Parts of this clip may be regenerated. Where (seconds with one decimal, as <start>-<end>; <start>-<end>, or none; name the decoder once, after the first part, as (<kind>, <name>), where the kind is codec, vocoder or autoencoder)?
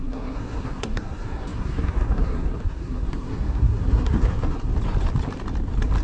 0.0-4.7 (codec, SNAC)